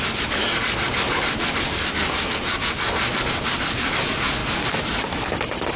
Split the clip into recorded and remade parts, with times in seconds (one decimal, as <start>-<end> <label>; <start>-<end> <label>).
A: 0.0-4.4 recorded; 4.4-5.2 remade; 5.2-5.8 recorded